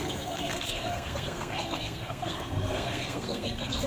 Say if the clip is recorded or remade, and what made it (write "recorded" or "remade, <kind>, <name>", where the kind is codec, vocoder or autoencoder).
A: remade, codec, SNAC